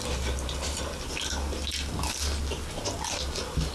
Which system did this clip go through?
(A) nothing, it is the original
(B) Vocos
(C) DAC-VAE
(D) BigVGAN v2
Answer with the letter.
A